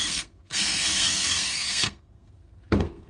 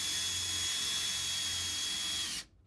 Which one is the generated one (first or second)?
first